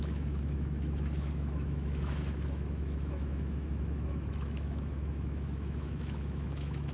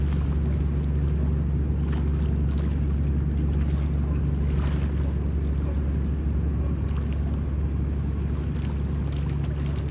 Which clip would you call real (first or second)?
second